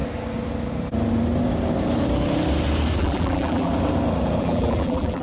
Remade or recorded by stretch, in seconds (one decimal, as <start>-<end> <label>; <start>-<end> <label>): 0.0-3.0 recorded; 3.0-3.7 remade; 3.7-4.4 recorded; 4.4-5.2 remade